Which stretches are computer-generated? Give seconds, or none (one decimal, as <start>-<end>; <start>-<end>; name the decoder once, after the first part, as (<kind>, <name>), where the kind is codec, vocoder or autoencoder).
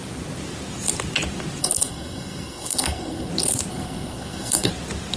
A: 1.6-3.3 (codec, SNAC); 3.7-4.7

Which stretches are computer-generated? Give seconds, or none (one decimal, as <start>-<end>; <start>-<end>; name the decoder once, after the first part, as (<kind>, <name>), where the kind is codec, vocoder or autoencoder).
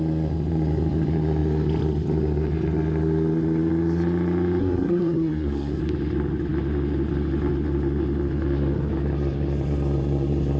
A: 4.6-5.8 (codec, SNAC)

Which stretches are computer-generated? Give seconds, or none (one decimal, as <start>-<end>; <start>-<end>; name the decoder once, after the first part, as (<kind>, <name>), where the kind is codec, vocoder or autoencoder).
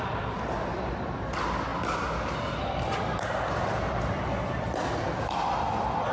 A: none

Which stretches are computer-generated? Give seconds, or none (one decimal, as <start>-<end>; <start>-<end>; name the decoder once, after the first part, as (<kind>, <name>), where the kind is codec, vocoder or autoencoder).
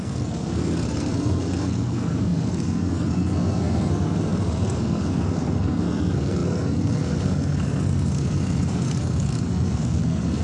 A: 0.0-10.4 (codec, SNAC)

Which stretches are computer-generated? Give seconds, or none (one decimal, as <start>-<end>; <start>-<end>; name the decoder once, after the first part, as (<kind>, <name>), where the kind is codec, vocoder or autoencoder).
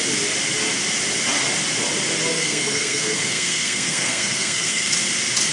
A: 2.3-4.9 (codec, SNAC)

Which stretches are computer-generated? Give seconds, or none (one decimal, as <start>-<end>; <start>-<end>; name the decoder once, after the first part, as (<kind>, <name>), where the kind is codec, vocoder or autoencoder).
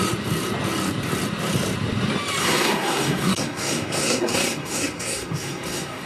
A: 2.4-6.1 (codec, SNAC)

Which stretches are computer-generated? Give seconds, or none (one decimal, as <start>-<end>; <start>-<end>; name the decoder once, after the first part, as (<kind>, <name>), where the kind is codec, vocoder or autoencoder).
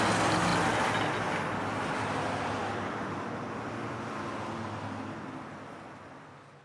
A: none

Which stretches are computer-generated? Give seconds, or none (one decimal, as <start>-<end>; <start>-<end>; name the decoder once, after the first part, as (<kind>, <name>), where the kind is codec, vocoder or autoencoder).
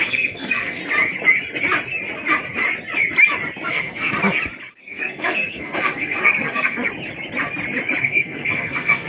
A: 0.0-0.8 (codec, SNAC); 3.7-4.2; 4.7-6.9; 8.0-9.1